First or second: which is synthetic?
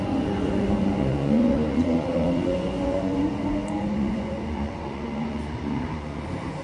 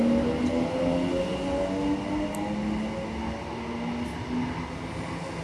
first